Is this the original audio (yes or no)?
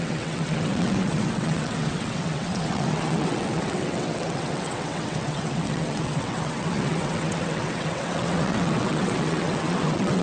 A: no